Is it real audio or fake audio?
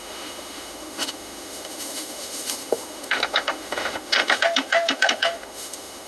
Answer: fake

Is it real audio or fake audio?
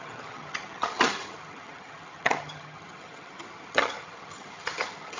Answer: fake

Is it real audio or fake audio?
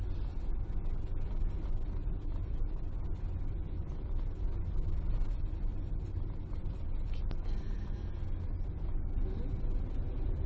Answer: real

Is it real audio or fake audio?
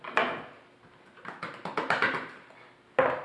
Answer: real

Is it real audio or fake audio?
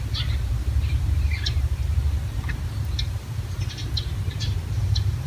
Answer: fake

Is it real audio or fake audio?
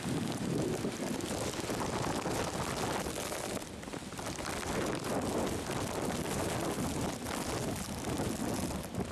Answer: real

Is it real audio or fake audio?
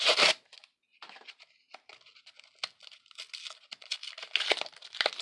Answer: real